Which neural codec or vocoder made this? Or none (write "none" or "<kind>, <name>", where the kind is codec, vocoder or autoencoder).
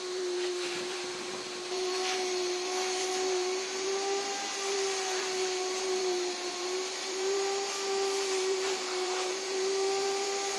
vocoder, BigVGAN v2